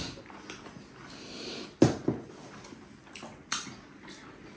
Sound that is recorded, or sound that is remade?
recorded